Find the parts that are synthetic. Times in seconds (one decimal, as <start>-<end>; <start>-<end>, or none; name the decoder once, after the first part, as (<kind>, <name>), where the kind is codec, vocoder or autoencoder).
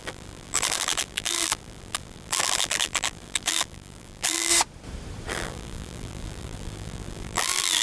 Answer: 0.0-4.5 (vocoder, BigVGAN v2); 5.3-7.8